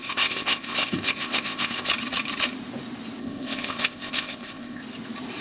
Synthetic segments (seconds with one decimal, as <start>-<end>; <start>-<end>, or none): 0.0-1.9; 3.2-4.8

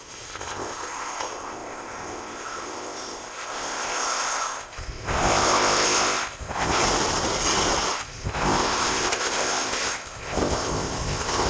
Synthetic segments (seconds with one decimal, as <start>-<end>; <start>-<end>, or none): 0.0-6.8; 7.9-11.5

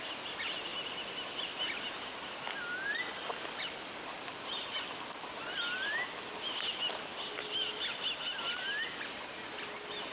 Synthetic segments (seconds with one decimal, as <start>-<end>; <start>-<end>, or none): none

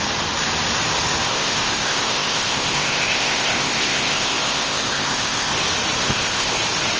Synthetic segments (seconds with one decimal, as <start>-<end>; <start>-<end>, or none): 1.3-5.5; 6.0-6.6

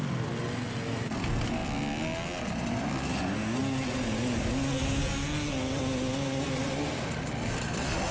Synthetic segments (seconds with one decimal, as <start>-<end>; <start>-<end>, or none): none

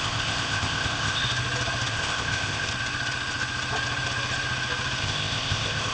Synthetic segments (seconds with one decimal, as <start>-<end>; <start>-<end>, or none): 0.0-1.2; 1.9-2.7; 5.0-5.9